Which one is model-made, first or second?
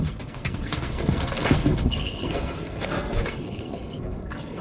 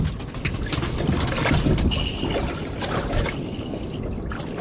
first